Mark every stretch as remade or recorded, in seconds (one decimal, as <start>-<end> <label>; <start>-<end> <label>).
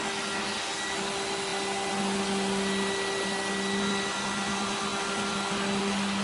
0.0-6.2 recorded